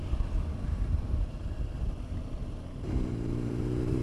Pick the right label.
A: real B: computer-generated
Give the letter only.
B